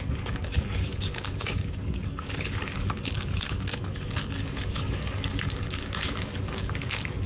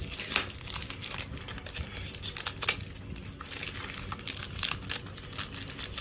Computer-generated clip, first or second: first